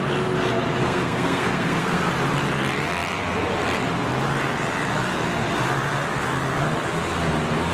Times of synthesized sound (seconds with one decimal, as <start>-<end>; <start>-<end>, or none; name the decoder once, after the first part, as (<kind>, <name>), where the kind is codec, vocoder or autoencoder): 0.8-2.1 (codec, SNAC)